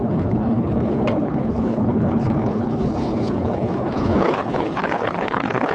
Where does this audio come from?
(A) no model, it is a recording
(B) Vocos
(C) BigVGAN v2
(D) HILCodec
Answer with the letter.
D